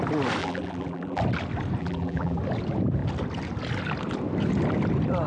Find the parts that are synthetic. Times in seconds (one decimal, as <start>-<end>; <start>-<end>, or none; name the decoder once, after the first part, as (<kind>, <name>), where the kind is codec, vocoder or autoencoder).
0.4-1.2 (vocoder, BigVGAN v2); 1.8-2.4